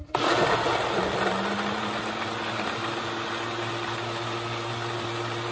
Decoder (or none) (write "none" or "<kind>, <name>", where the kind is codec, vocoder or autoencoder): none